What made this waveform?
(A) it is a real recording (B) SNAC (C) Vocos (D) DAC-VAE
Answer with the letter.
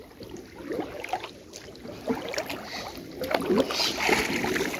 A